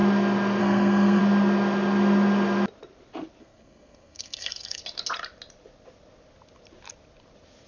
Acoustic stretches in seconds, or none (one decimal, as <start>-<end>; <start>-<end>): 0.0-0.6; 1.2-3.4; 4.8-7.7